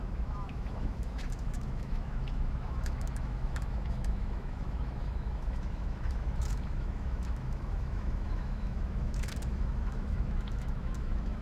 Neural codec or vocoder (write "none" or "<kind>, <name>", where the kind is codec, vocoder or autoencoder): autoencoder, DAC-VAE